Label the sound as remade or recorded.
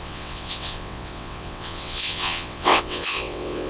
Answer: remade